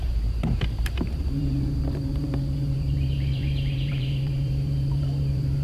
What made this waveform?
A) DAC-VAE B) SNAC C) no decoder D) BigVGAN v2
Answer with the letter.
D